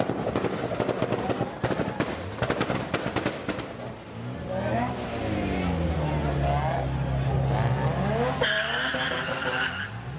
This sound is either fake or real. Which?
real